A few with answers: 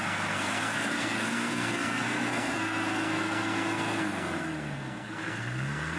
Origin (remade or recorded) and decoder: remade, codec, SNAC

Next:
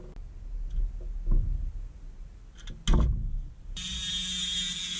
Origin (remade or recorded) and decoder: recorded